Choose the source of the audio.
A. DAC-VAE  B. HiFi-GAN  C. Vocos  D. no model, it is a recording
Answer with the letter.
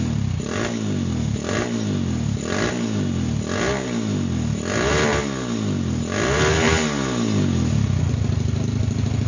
D